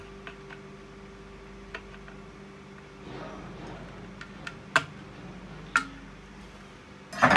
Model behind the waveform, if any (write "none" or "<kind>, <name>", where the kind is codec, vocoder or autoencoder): none